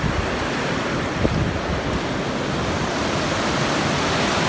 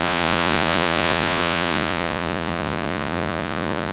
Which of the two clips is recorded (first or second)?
first